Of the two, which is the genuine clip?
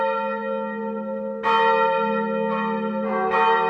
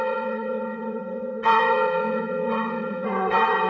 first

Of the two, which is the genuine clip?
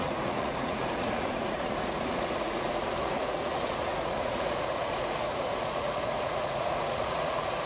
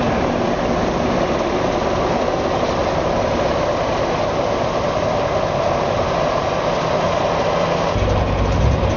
second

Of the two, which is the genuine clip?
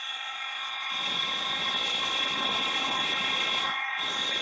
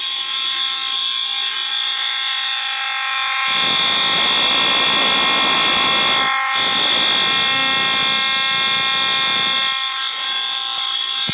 second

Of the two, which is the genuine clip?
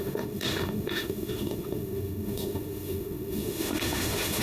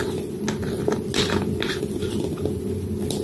second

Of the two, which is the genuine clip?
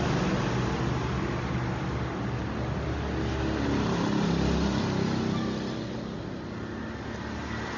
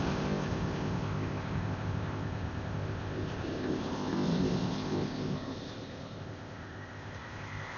first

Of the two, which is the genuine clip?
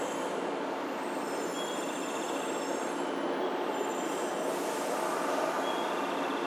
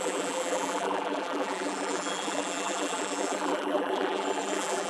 first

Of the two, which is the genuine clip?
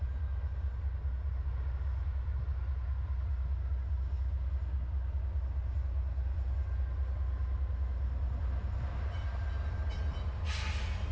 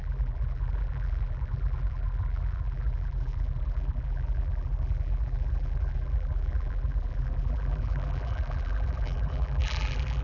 first